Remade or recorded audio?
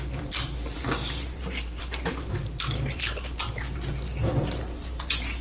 remade